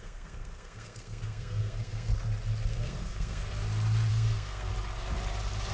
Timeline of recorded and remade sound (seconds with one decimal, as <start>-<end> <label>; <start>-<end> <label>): 0.0-2.1 remade; 2.1-2.7 recorded; 2.7-3.4 remade; 3.4-4.1 recorded; 4.1-4.7 remade; 4.7-5.7 recorded